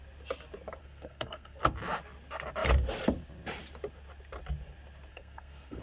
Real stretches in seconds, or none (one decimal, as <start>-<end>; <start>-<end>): 0.0-0.8; 1.6-5.1